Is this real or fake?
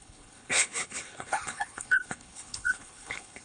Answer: fake